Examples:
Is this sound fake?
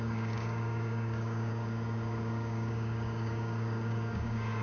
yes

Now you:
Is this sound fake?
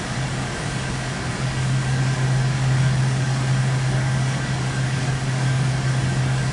yes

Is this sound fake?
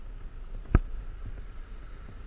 no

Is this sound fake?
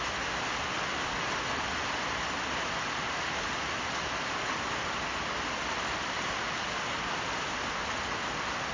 no